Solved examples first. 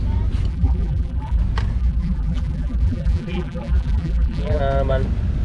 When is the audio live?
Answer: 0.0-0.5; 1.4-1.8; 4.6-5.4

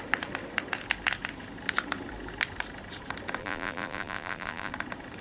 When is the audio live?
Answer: 0.0-3.4; 4.7-5.2